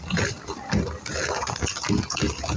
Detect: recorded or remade recorded